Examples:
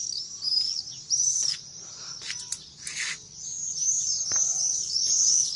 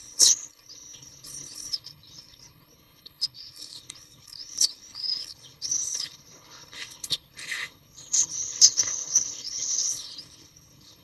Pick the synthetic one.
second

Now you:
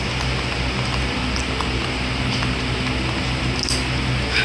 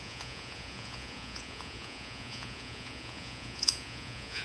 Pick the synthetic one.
second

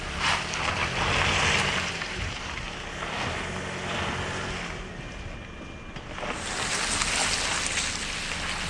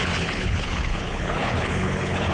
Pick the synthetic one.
second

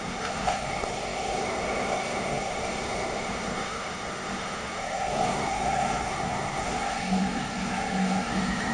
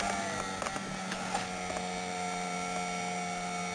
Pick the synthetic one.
first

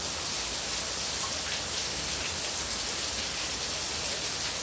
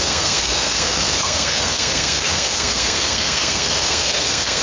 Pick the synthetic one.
second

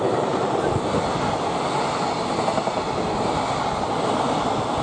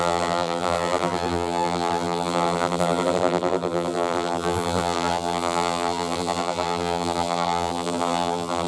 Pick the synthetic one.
second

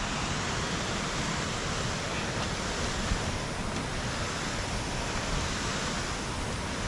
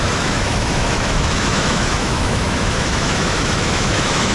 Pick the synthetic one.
second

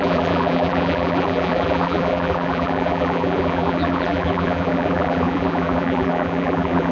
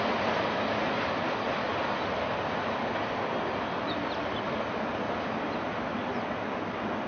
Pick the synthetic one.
first